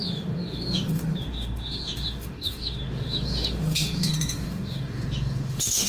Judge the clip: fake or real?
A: fake